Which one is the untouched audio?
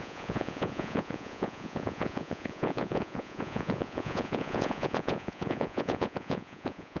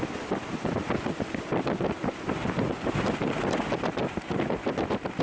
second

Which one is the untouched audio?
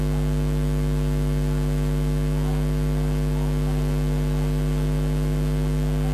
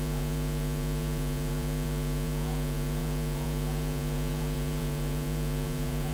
first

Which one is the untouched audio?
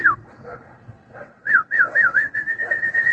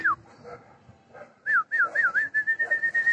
second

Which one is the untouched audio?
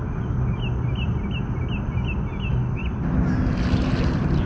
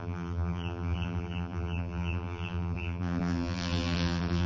first